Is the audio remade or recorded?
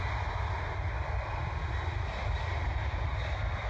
recorded